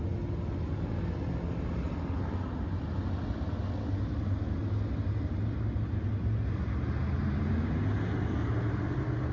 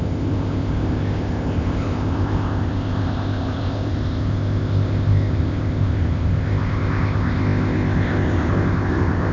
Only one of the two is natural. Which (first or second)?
first